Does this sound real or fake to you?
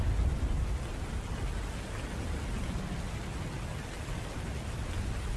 real